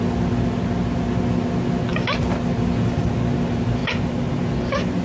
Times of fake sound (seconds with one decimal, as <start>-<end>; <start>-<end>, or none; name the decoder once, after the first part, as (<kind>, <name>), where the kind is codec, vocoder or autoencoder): none